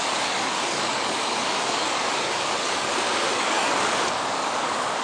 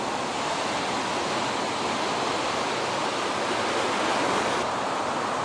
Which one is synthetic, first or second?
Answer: first